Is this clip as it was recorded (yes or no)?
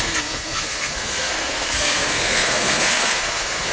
no